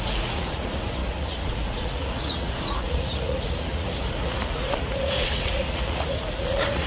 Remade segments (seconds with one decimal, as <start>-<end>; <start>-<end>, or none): 0.0-6.9